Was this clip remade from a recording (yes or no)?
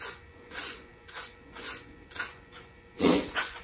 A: yes